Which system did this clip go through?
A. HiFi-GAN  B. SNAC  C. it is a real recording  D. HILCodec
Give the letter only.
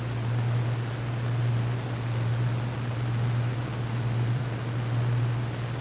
C